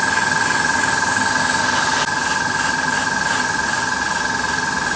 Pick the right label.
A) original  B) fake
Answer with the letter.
A